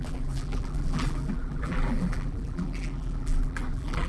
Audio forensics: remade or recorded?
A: remade